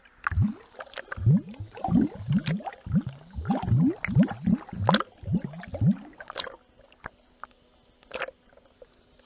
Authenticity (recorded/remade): recorded